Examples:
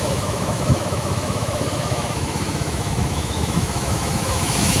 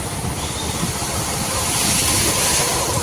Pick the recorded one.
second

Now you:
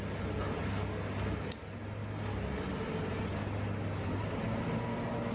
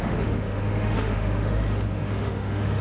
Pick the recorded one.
first